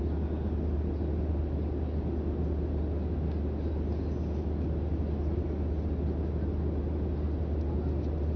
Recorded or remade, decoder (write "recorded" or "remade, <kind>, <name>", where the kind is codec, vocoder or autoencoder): recorded